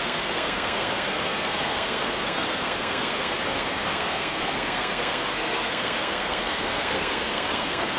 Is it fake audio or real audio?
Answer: fake